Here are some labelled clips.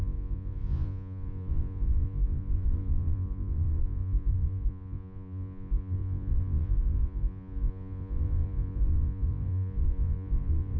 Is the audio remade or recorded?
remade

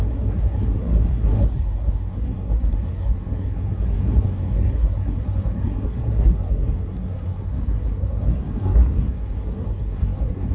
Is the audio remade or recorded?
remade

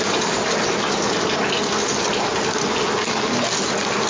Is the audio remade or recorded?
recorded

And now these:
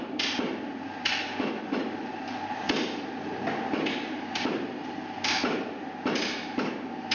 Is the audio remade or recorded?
recorded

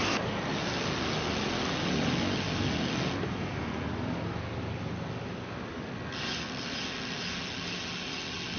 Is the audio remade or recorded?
recorded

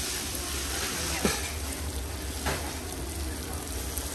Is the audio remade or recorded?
recorded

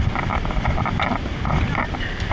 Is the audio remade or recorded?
recorded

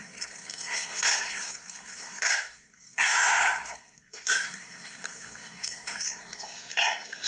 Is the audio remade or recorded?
remade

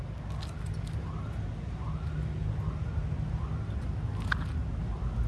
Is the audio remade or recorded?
recorded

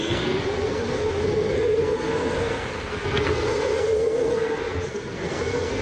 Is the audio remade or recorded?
remade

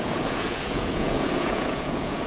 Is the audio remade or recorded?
remade